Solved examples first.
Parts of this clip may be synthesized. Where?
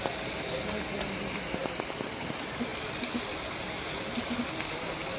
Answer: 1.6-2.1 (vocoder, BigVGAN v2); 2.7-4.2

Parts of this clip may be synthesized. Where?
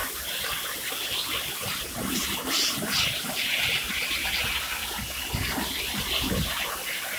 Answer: 0.0-4.3 (vocoder, BigVGAN v2)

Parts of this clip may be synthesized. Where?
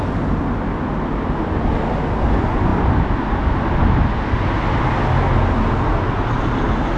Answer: none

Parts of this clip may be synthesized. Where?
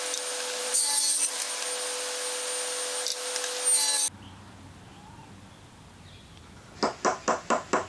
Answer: 0.6-1.4 (vocoder, BigVGAN v2)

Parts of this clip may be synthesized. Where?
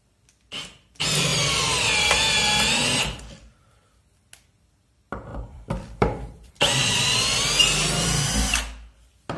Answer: 5.3-6.5 (vocoder, BigVGAN v2)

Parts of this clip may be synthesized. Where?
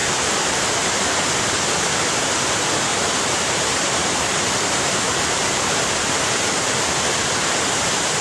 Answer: 0.0-1.1 (vocoder, BigVGAN v2); 2.9-6.9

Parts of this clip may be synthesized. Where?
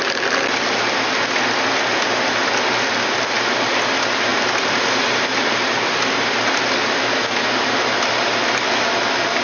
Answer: 4.3-5.9 (vocoder, BigVGAN v2)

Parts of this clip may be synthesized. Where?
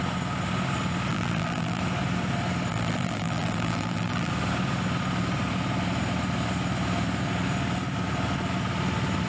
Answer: 1.1-1.8 (vocoder, BigVGAN v2); 2.7-4.3